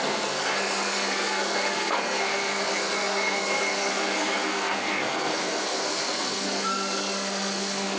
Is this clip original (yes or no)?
no